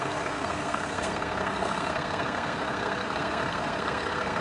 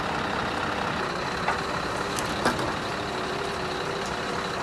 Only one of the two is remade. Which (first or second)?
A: first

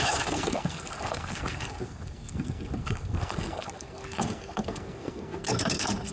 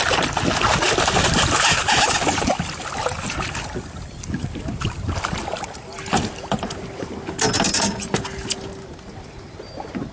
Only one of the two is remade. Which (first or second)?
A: first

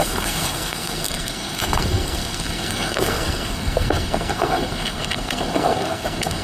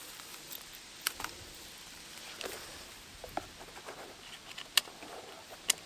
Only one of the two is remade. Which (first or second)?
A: first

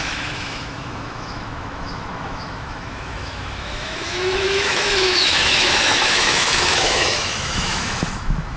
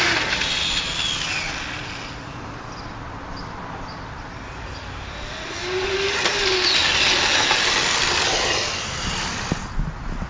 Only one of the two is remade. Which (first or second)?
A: first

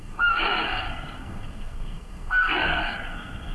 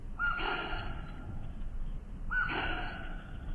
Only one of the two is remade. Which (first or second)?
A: first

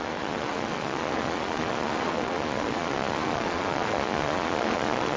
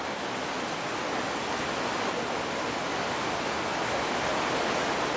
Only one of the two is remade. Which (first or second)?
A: first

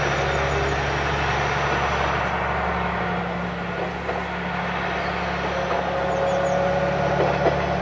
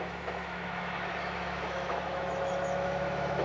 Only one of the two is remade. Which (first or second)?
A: second